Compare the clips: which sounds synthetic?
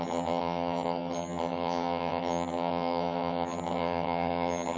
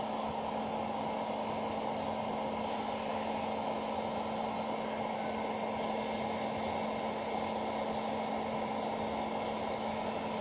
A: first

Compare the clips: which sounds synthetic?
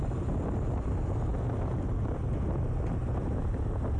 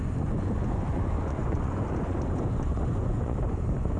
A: second